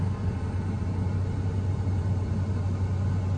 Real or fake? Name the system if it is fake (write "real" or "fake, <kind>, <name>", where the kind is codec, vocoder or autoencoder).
real